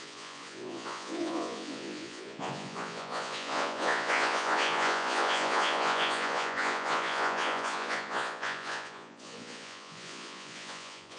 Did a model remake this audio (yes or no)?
yes